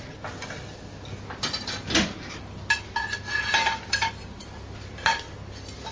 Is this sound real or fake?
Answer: real